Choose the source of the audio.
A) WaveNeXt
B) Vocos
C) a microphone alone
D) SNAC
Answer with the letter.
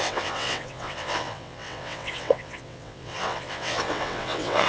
A